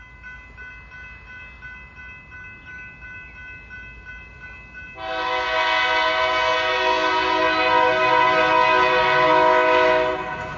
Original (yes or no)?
yes